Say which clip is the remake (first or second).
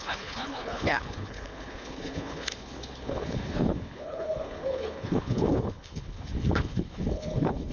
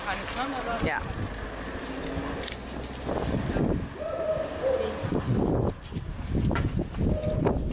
first